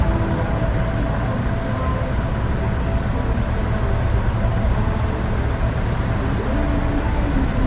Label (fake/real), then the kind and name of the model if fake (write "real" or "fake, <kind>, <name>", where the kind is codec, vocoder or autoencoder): real